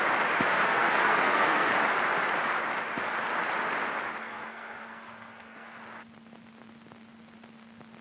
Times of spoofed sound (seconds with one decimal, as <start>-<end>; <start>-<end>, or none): 0.5-1.7; 4.2-5.8